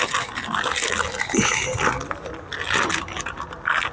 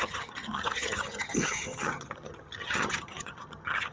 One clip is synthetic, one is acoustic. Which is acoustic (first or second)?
first